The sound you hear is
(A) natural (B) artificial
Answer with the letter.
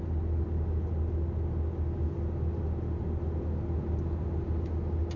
A